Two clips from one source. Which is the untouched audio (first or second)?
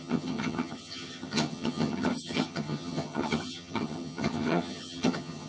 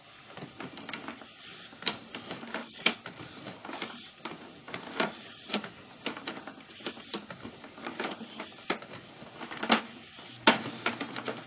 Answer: second